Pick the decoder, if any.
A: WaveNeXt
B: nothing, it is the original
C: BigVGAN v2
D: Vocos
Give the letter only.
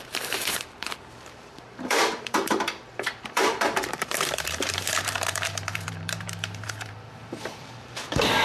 C